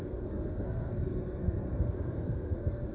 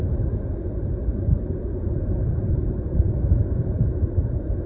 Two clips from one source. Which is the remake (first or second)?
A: first